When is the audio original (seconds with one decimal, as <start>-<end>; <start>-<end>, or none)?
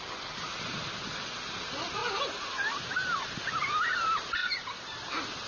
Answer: 0.0-5.5